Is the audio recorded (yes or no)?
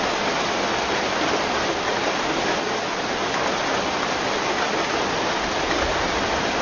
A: yes